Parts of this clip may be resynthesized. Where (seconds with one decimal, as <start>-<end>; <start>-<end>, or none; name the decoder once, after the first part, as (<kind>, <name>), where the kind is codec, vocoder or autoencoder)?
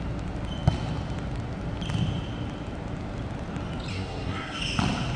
3.9-4.6 (codec, SNAC)